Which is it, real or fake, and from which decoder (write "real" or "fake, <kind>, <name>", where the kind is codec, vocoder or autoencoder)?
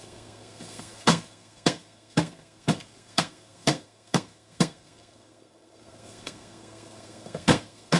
fake, codec, SNAC